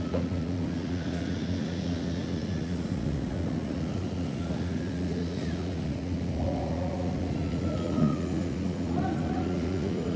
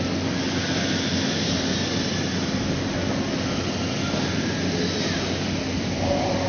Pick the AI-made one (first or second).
first